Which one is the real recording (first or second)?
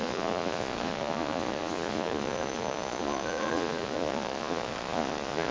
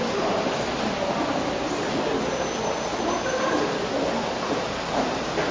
second